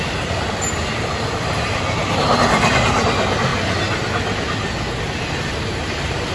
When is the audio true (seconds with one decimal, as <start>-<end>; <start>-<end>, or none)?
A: 0.0-6.3